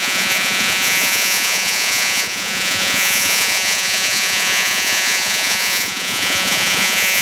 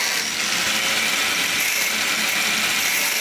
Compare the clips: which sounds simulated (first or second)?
first